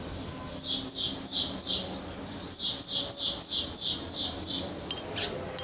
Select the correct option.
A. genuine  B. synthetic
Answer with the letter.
A